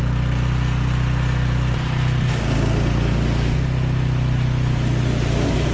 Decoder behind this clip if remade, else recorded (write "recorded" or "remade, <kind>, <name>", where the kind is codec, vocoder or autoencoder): recorded